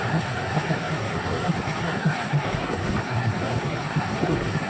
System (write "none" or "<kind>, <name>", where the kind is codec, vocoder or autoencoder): codec, SNAC